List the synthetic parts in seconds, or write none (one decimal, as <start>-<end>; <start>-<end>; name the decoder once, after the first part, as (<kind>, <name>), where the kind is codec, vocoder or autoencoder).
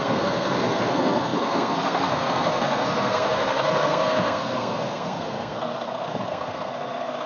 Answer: 0.0-7.3 (codec, SNAC)